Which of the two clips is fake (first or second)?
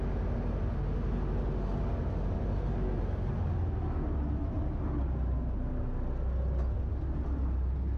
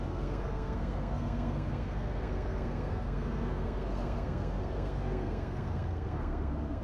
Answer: second